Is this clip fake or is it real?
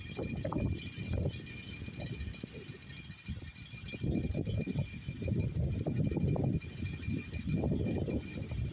real